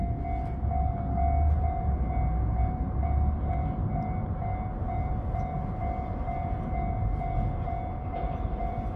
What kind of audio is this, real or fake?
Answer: real